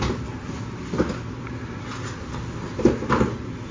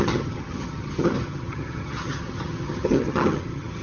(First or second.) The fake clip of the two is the second